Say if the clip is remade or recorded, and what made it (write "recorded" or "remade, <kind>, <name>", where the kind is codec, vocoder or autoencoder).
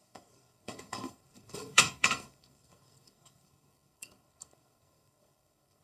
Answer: remade, codec, SNAC